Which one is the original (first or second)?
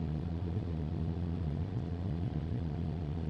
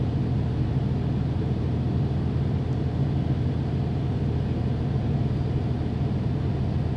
second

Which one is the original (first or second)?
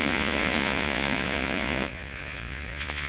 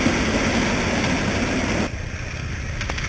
second